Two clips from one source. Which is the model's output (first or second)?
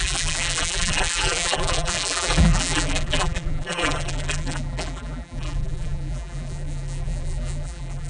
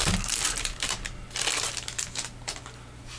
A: first